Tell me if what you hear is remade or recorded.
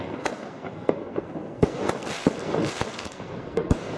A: remade